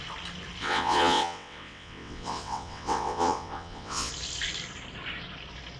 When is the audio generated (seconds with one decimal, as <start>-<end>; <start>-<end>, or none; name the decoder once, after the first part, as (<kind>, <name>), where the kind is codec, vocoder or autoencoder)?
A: 0.6-4.1 (vocoder, WaveNeXt)